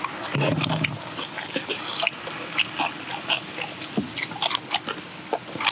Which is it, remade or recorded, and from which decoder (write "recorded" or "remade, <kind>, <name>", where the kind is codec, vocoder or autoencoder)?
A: recorded